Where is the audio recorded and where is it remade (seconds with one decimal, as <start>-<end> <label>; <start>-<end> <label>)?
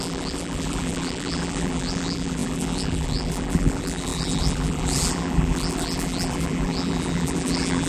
0.0-7.9 remade